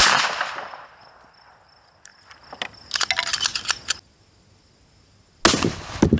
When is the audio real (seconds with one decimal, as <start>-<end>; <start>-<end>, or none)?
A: 0.0-6.2